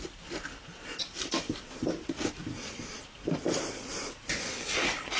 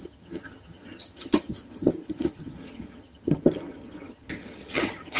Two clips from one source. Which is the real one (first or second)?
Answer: first